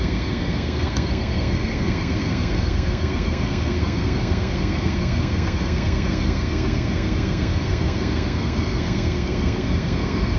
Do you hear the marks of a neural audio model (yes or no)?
yes